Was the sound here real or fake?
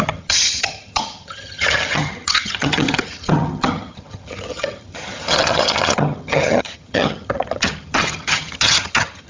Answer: fake